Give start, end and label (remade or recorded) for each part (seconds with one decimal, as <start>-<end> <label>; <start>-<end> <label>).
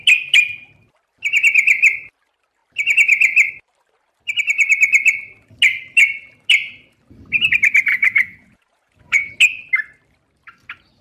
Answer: 0.0-7.9 recorded; 7.9-9.3 remade; 9.3-11.0 recorded